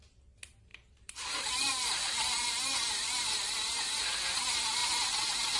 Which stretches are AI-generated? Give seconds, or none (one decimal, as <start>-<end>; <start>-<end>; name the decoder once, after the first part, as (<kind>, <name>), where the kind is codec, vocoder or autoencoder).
0.7-4.1 (vocoder, BigVGAN v2); 4.8-5.6